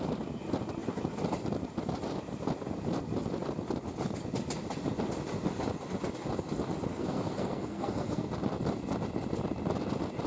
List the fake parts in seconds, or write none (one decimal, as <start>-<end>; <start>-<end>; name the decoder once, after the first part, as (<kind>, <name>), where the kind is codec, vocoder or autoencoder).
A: 6.9-8.3 (codec, SNAC)